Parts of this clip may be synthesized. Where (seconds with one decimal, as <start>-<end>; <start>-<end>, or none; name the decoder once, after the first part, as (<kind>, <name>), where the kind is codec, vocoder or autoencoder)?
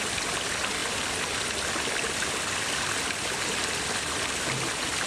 none